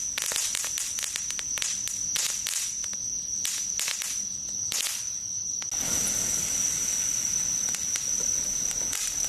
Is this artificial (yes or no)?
no